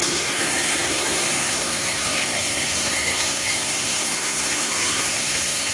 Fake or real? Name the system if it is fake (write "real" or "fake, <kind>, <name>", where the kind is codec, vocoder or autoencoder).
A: fake, codec, SNAC